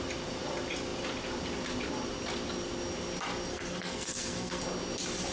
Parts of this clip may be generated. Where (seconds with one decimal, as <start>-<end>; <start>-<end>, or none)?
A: 3.5-4.6

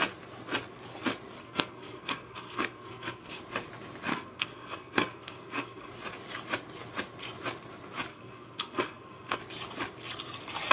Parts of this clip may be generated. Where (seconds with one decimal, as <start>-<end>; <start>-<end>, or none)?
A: 1.4-3.4; 4.1-5.9; 8.1-9.4

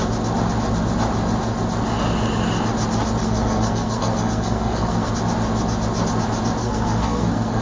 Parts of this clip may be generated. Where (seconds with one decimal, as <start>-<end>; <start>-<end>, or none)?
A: 3.2-5.1; 6.6-7.6

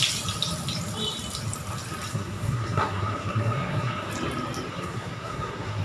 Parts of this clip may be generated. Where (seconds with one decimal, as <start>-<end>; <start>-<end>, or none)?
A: 2.1-4.1; 4.7-5.8

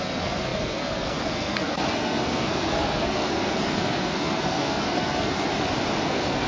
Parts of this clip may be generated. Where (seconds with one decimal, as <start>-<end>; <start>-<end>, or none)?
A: 0.0-5.5; 6.0-6.5

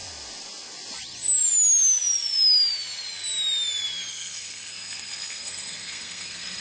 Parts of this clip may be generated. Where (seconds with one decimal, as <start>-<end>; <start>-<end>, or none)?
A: 4.1-6.6

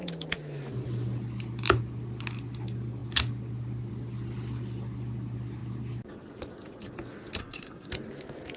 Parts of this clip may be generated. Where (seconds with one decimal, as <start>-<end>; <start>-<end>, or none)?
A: 7.4-7.9

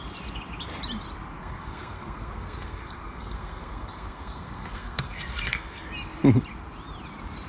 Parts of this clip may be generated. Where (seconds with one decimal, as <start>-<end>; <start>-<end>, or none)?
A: 1.4-5.9